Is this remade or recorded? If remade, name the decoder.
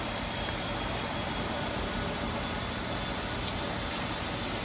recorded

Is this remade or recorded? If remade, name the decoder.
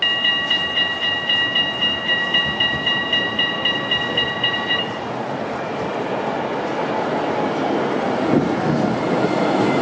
recorded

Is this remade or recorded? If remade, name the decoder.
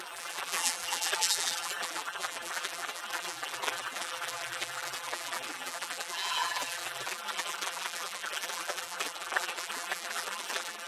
remade, vocoder, BigVGAN v2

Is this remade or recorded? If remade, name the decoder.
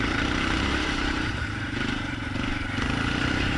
remade, vocoder, BigVGAN v2